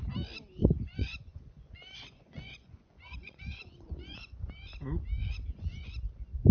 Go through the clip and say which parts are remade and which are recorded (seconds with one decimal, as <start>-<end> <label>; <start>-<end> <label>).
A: 0.0-0.6 recorded; 0.6-4.5 remade; 4.5-5.2 recorded; 5.2-5.9 remade; 5.9-6.5 recorded